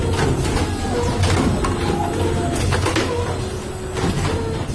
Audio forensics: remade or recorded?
recorded